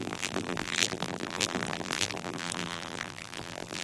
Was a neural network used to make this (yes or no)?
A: yes